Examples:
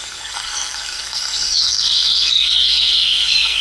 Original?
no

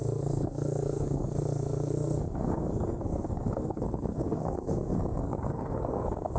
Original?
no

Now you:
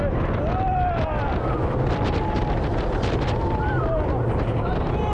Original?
yes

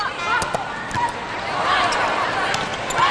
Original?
yes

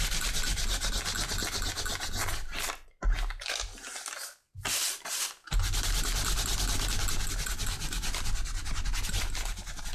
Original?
yes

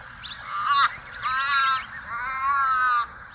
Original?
yes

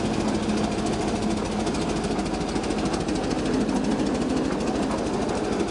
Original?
yes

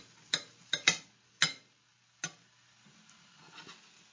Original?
yes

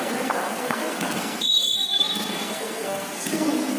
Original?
no